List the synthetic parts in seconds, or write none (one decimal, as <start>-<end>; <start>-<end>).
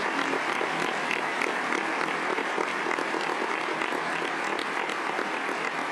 none